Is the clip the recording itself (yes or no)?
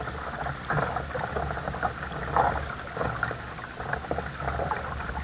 yes